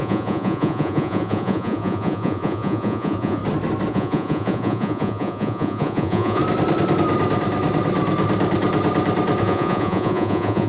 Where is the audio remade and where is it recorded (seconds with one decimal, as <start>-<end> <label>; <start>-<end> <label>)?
0.0-3.4 remade; 3.4-3.9 recorded; 3.9-6.4 remade; 6.4-9.4 recorded; 9.4-10.7 remade